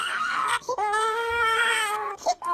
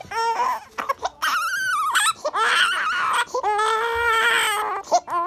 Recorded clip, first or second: second